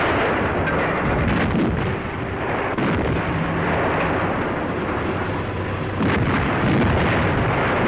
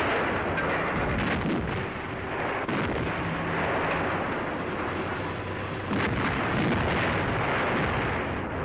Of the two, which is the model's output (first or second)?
first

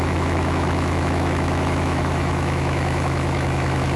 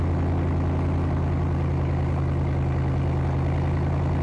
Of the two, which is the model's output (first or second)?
first